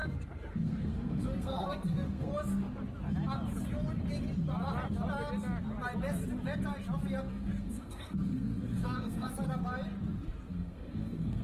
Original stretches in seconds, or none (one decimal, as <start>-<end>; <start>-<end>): 0.0-0.5; 2.3-7.3; 9.3-10.5